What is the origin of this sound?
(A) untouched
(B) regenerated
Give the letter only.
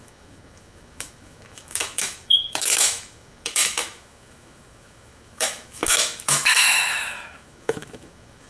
B